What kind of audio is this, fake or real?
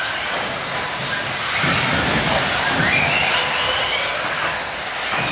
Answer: real